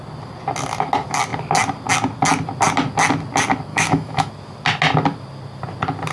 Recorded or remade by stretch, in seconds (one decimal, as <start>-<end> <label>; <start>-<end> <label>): 0.0-3.7 recorded; 3.7-4.3 remade; 4.3-6.1 recorded